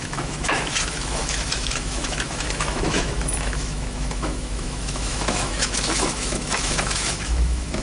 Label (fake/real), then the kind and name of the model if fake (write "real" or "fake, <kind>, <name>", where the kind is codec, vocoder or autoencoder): fake, autoencoder, DAC-VAE